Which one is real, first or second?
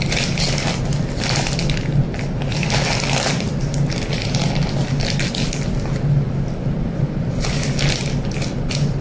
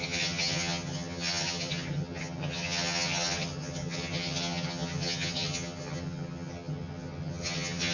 first